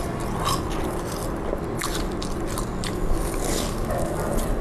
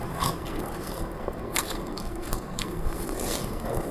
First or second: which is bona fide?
first